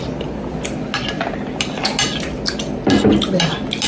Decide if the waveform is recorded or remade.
recorded